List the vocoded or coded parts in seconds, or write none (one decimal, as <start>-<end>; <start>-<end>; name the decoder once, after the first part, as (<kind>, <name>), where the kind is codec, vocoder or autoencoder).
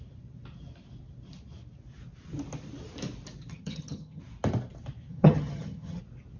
3.5-4.2 (vocoder, HiFi-GAN); 5.1-6.0